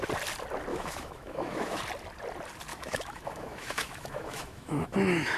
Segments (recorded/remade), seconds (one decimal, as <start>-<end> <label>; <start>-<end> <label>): 0.0-0.7 recorded; 0.7-1.8 remade; 1.8-2.7 recorded; 2.7-5.4 remade